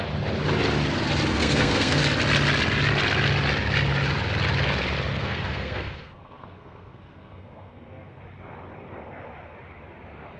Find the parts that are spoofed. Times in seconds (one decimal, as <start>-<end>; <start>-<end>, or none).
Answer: 1.3-2.0; 5.1-8.2